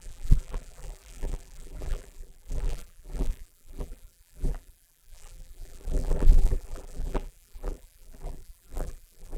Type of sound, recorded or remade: remade